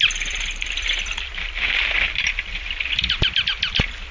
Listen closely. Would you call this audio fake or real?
real